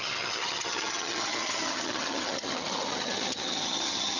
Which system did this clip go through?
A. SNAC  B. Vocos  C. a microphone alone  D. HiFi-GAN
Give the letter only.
D